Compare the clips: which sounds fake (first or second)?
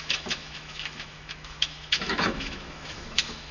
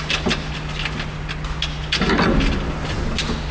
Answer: first